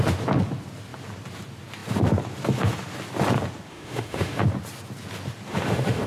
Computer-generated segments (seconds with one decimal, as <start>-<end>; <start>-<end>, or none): 3.7-4.4; 5.5-6.1